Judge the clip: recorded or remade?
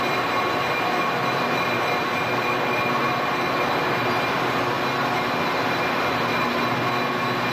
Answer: recorded